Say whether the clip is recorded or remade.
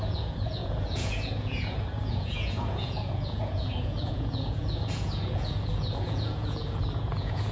remade